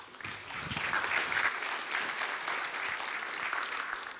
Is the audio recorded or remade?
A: recorded